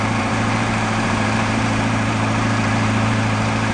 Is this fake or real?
fake